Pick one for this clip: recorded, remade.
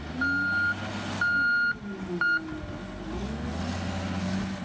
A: recorded